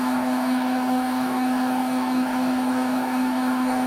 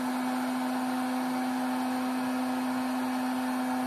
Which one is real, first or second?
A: second